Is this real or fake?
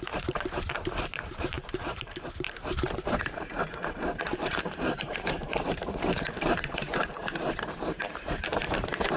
fake